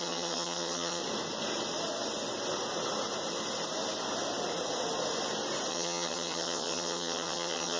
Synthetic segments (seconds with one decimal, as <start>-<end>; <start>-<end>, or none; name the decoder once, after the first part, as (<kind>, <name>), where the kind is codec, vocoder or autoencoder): 0.0-1.0 (vocoder, HiFi-GAN); 5.7-7.8